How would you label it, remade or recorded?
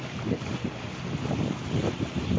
recorded